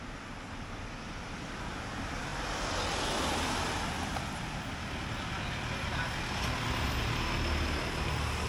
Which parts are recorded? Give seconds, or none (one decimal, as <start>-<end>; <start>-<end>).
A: 0.0-8.5